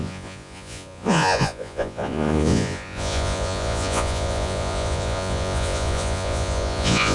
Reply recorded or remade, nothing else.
remade